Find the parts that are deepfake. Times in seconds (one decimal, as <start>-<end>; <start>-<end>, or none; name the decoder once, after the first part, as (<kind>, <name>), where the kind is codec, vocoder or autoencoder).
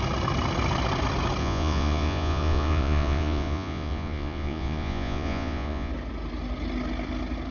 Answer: 1.4-5.9 (vocoder, Vocos)